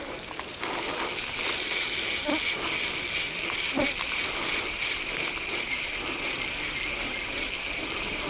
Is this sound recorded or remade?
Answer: recorded